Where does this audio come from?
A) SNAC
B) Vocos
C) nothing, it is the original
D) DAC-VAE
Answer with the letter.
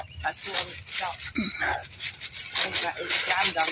C